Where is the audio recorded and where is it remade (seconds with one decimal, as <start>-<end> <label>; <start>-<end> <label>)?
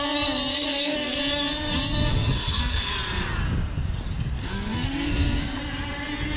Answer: 0.0-0.5 recorded; 0.5-1.2 remade; 1.2-2.1 recorded; 2.1-2.9 remade; 2.9-4.4 recorded; 4.4-5.6 remade; 5.6-6.4 recorded